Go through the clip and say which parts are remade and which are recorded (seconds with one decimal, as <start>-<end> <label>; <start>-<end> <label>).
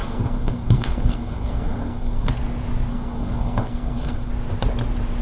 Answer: 0.0-2.3 remade; 2.3-2.9 recorded; 2.9-4.3 remade; 4.3-5.2 recorded